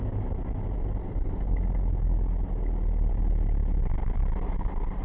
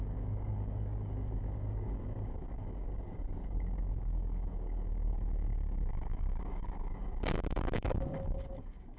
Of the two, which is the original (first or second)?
first